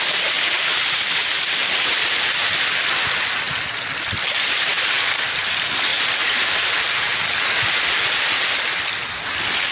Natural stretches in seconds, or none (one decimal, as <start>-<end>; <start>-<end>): 0.0-9.7

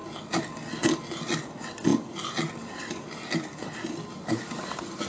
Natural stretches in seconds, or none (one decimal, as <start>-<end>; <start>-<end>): 0.0-5.1

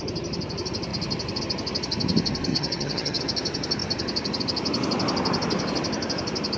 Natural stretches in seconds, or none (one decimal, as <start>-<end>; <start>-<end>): 0.0-2.5; 3.2-6.6

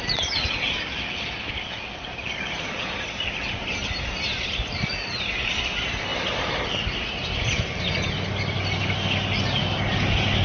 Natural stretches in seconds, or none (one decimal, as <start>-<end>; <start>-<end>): 0.0-10.4